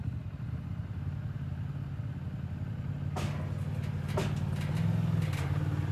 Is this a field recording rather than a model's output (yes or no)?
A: yes